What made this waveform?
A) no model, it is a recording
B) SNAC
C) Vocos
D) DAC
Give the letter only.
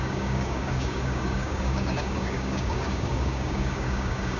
D